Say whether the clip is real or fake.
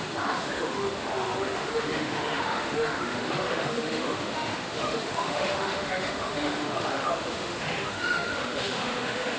fake